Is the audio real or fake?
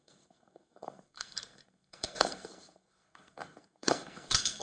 fake